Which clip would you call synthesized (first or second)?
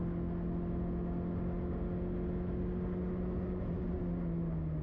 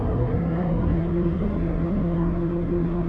second